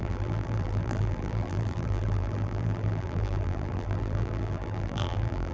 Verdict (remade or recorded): remade